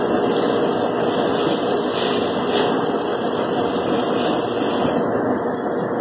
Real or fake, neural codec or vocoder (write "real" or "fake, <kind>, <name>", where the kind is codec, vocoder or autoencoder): real